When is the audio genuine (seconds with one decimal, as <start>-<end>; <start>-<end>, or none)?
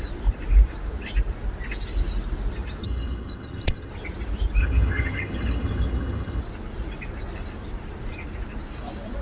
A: 0.0-2.8; 3.9-4.6; 6.4-9.2